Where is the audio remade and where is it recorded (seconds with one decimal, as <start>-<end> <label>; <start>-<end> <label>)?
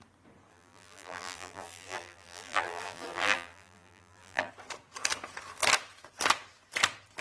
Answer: 0.0-0.5 recorded; 0.5-4.5 remade; 4.5-7.2 recorded